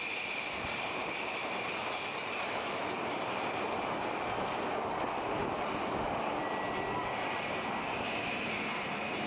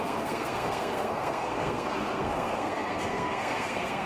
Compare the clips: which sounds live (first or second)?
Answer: first